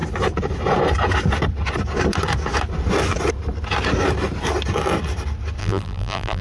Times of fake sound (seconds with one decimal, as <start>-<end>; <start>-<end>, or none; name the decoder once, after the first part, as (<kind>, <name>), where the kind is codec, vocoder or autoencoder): 5.6-6.4 (vocoder, BigVGAN v2)